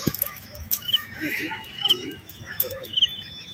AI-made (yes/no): yes